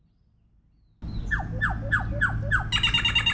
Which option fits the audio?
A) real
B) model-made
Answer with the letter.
A